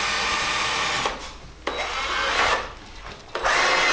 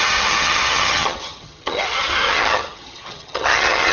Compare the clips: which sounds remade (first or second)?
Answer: second